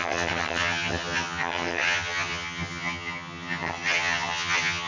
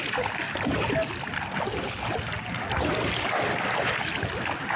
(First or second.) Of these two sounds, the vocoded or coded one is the first